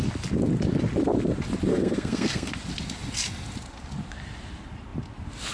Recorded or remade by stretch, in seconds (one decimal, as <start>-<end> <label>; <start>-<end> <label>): 0.0-1.7 recorded; 1.7-2.5 remade; 2.5-5.5 recorded